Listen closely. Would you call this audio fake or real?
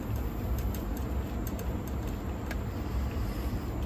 real